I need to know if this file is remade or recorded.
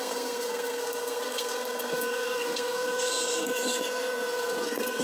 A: remade